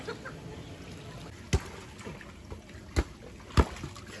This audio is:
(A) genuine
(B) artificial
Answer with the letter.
A